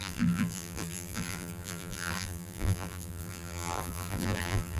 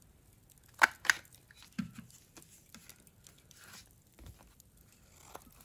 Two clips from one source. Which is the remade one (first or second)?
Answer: first